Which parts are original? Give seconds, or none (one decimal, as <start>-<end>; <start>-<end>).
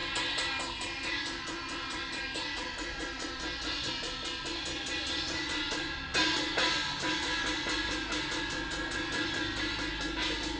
0.0-10.6